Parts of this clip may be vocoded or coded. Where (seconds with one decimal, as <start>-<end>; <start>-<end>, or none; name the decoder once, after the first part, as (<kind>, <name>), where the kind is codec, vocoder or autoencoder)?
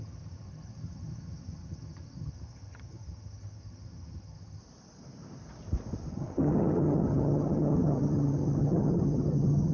0.0-4.6 (vocoder, HiFi-GAN); 6.1-9.7